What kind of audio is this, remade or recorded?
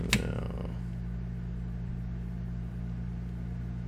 recorded